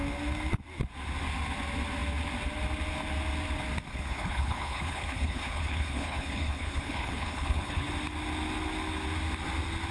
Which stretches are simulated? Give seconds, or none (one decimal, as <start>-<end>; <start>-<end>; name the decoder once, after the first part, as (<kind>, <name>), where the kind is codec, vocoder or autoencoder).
3.9-7.9 (codec, HILCodec)